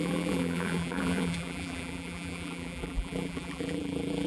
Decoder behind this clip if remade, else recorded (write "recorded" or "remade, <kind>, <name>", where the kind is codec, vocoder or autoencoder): remade, vocoder, BigVGAN v2